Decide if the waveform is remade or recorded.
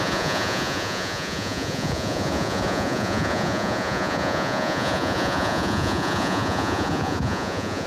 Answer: remade